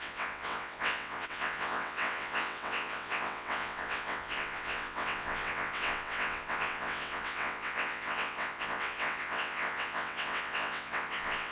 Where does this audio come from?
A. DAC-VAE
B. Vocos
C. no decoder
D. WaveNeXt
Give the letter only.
D